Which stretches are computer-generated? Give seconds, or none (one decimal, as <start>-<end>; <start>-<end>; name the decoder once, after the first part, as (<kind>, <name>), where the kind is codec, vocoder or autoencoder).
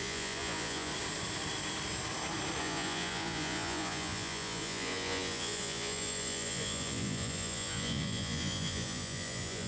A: 0.0-0.9 (vocoder, Vocos); 2.6-9.7